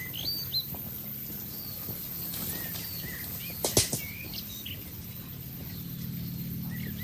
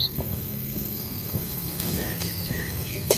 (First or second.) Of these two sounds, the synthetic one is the second